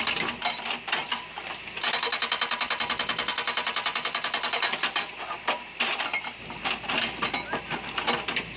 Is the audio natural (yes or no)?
yes